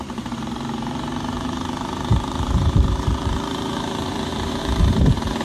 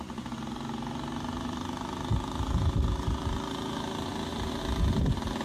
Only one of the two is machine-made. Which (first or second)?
first